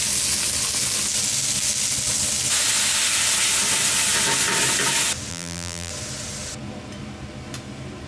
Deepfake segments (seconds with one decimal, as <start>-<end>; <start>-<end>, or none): 5.3-5.9